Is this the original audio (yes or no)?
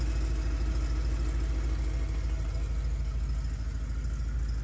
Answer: yes